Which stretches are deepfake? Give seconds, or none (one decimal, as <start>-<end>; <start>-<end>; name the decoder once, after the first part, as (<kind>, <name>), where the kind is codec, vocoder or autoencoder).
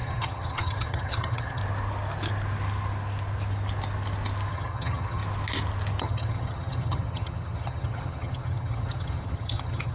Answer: 0.0-1.6 (vocoder, HiFi-GAN); 4.5-5.2; 6.0-9.9